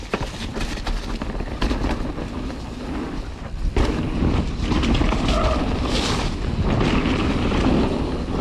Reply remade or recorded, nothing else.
recorded